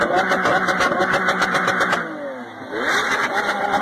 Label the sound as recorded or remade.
recorded